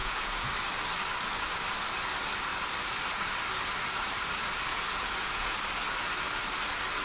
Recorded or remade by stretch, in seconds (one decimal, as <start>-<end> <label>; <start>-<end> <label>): 0.0-0.5 remade; 0.5-4.7 recorded; 4.7-5.6 remade; 5.6-7.0 recorded